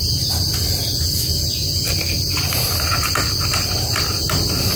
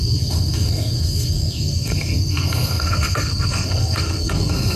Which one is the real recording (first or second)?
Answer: first